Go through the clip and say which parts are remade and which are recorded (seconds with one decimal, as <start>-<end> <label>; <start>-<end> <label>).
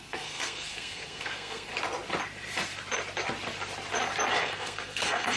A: 0.0-1.7 remade; 1.7-4.4 recorded; 4.4-5.4 remade